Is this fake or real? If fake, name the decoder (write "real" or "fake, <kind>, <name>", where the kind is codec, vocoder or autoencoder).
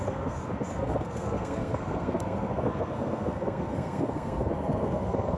fake, codec, SNAC